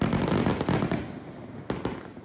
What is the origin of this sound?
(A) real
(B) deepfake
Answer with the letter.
A